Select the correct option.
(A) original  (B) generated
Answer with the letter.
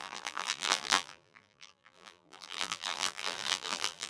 B